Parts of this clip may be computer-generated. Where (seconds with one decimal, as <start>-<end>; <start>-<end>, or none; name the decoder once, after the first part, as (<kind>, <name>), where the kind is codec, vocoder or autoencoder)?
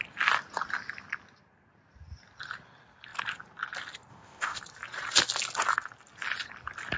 4.1-4.6 (codec, ZipCodec)